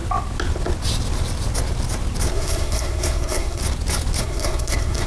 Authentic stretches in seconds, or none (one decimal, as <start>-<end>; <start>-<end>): 0.0-2.3; 3.6-4.2